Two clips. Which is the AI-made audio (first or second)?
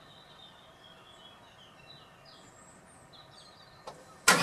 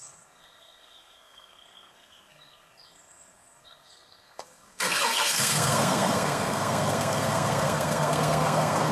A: second